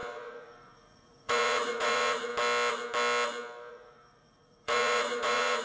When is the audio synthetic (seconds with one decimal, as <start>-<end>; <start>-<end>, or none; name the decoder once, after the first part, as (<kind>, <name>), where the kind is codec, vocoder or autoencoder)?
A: 0.0-2.3 (vocoder, Vocos); 3.7-5.6